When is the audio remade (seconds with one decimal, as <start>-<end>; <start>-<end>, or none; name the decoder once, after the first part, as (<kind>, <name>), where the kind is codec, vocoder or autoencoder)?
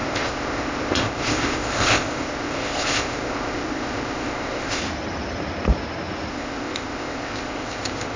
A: 0.0-4.8 (codec, ZipCodec); 6.3-8.2